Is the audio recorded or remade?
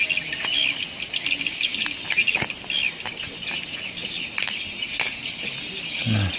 recorded